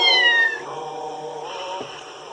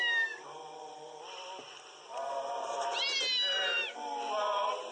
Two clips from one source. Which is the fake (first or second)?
first